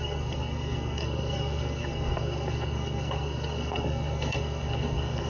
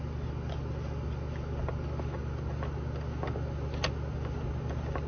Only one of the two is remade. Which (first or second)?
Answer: first